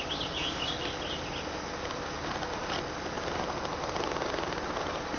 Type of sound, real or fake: real